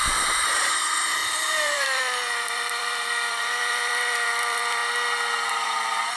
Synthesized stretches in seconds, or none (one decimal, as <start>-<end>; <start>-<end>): 0.0-4.8; 5.5-6.2